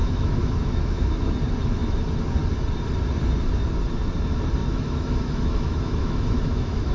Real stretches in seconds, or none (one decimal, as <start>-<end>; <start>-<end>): 1.1-4.6